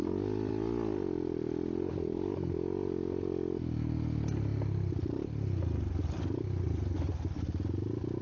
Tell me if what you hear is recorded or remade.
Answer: recorded